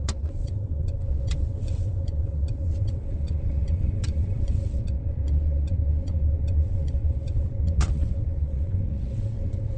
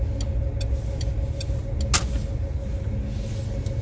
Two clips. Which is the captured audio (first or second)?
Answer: second